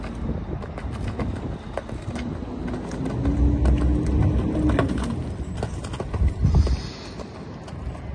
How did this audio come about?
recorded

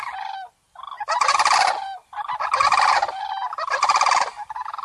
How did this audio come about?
recorded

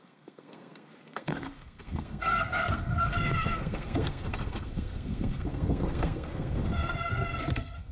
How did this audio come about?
remade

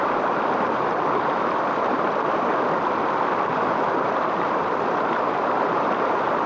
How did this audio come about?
recorded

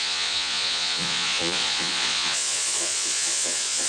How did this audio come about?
remade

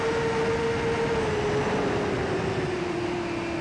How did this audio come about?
recorded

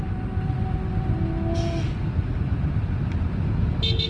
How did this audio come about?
recorded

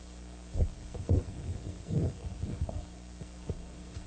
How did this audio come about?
remade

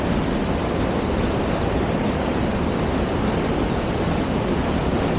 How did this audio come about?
recorded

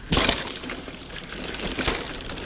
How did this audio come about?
recorded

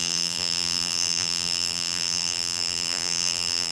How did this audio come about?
remade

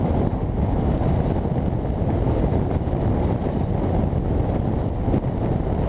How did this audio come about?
recorded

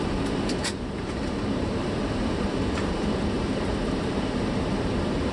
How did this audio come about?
remade